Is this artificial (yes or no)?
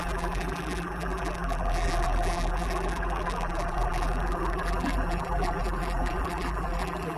yes